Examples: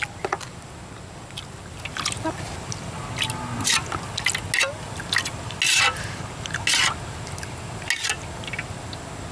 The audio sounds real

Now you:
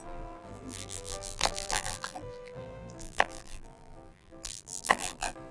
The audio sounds fake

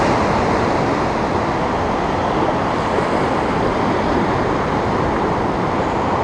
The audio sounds real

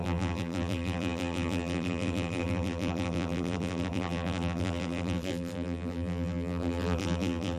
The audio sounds fake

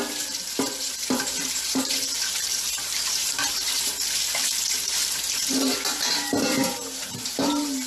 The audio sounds fake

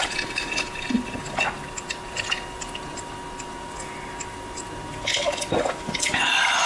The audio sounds real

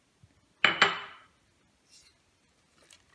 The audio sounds real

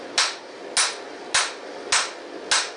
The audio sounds real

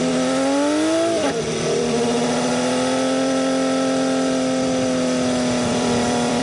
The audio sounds fake